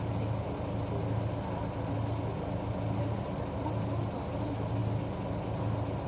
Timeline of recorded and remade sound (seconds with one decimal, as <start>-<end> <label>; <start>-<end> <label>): 0.0-6.1 recorded